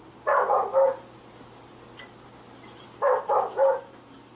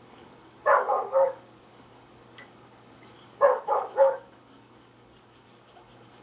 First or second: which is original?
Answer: first